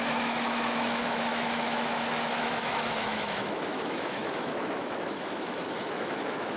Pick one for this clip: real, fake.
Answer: fake